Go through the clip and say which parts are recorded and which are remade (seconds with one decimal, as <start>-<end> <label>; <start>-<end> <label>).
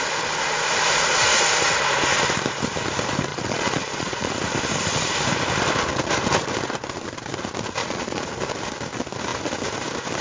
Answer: 0.0-3.3 recorded; 3.3-4.3 remade; 4.3-7.8 recorded; 7.8-8.3 remade; 8.3-10.2 recorded